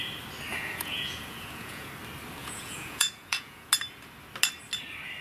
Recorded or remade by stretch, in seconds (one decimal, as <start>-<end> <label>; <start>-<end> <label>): 0.0-0.5 recorded; 0.5-1.9 remade; 1.9-2.4 recorded; 2.4-3.7 remade; 3.7-5.2 recorded